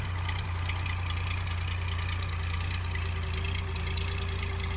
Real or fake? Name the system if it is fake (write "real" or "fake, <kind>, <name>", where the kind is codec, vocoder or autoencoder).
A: real